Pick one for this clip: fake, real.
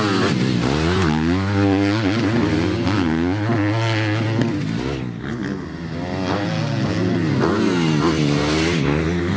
real